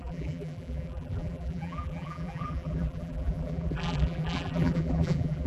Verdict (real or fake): fake